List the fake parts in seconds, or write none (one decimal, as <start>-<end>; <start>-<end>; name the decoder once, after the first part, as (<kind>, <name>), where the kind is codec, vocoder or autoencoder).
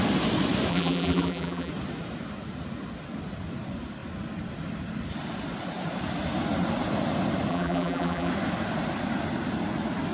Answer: 0.7-1.7 (vocoder, BigVGAN v2); 7.5-8.3